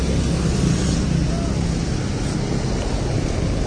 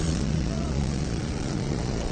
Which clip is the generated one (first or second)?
second